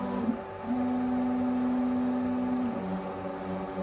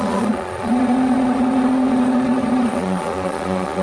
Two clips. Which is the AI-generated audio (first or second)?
second